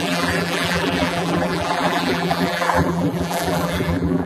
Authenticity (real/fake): fake